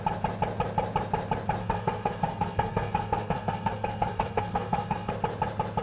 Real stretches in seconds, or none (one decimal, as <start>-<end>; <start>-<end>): 0.0-1.6; 5.1-5.8